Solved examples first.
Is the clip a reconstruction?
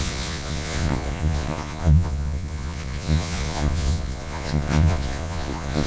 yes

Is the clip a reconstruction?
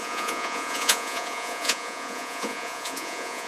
yes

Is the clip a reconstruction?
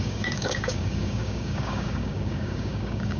yes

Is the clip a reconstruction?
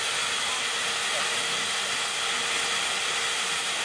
no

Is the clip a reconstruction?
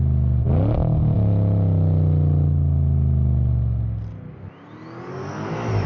no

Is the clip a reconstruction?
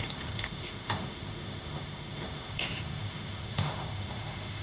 yes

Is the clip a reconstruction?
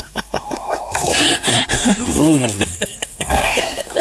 yes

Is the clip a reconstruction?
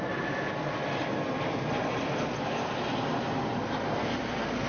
no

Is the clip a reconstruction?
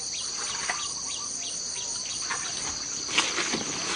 no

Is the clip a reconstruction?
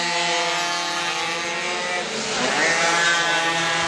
no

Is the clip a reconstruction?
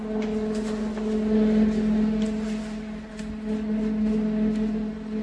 no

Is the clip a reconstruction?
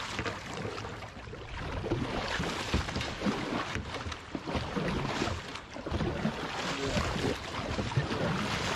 no